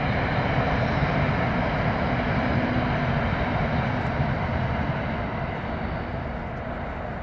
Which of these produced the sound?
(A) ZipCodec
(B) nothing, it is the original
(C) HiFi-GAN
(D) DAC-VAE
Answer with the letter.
B